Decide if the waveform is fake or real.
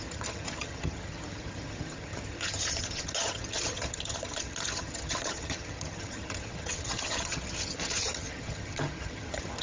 fake